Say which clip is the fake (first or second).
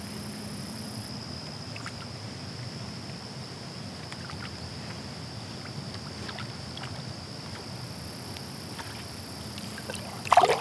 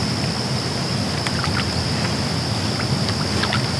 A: first